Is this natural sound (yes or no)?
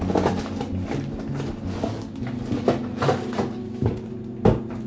yes